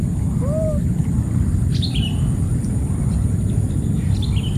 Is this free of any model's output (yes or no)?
yes